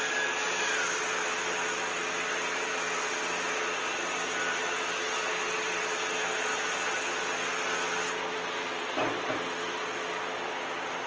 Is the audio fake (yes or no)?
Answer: no